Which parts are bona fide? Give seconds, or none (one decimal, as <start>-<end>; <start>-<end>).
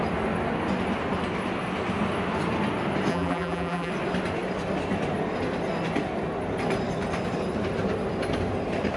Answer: 0.0-3.1; 3.9-9.0